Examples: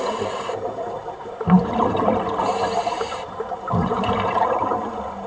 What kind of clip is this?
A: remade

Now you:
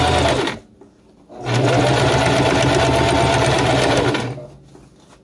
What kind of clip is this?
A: recorded